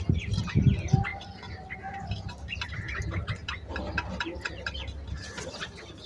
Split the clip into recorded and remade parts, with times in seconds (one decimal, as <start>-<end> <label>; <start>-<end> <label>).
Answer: 0.0-6.1 recorded